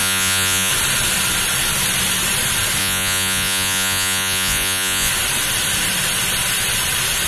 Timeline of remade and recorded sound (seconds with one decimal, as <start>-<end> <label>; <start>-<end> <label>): 0.0-0.7 remade; 0.7-2.8 recorded; 2.8-5.1 remade; 5.1-7.3 recorded